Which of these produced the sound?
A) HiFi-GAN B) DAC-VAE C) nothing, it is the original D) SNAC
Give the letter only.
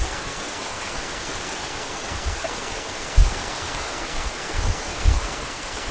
D